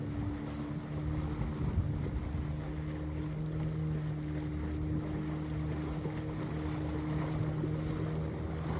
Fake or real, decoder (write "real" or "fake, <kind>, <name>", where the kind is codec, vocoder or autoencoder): real